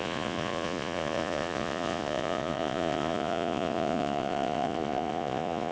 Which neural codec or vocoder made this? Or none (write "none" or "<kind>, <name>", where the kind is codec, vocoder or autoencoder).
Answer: vocoder, Vocos